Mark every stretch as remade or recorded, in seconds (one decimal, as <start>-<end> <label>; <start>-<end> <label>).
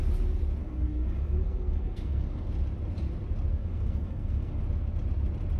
0.0-0.6 recorded; 0.6-2.5 remade; 2.5-3.5 recorded; 3.5-4.6 remade; 4.6-5.6 recorded